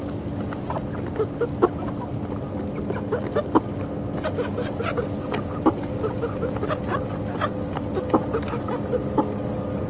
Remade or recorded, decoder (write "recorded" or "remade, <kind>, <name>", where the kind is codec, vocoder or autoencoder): recorded